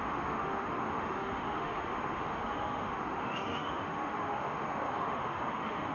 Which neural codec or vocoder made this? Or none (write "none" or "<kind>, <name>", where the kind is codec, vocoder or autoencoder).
autoencoder, DAC-VAE